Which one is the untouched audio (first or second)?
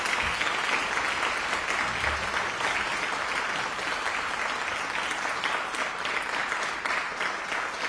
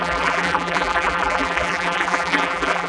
first